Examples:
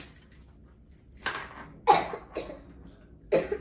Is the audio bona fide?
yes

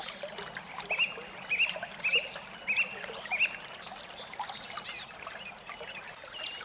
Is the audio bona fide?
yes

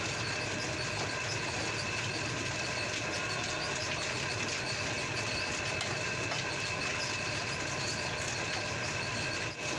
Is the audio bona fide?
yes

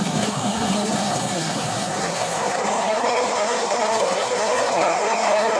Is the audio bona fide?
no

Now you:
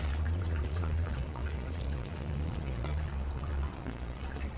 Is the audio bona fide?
no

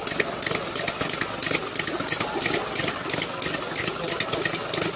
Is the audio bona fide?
yes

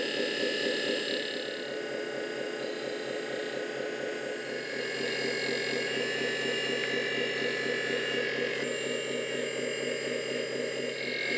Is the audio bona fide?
yes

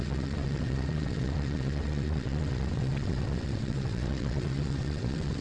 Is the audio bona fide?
no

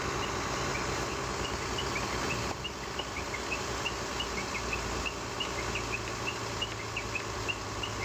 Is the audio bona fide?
yes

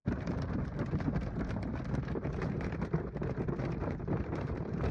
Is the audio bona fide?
no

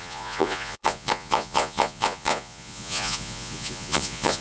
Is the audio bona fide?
no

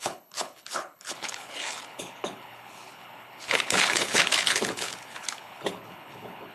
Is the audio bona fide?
no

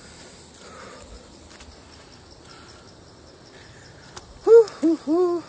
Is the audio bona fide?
yes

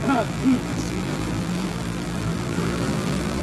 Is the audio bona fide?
no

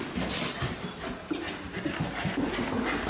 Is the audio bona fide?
yes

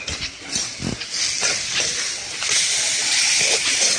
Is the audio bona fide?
yes